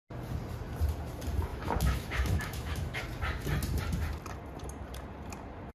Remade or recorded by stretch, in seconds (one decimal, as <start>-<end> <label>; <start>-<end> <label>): 0.0-1.5 recorded; 1.5-3.0 remade; 3.0-5.7 recorded